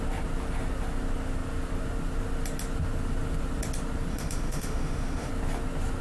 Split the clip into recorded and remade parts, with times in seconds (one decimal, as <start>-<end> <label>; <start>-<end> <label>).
0.0-4.1 recorded; 4.1-5.3 remade; 5.3-6.0 recorded